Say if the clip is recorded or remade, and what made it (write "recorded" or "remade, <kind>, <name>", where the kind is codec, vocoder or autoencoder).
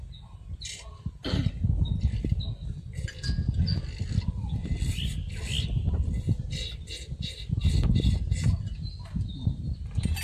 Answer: recorded